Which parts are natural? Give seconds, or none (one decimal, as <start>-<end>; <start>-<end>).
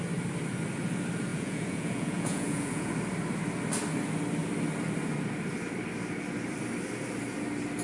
0.0-1.3; 2.9-7.8